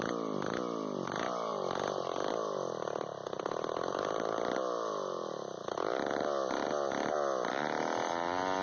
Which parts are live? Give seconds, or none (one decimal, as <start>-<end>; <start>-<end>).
0.0-8.6